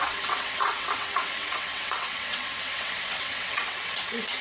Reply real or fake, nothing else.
fake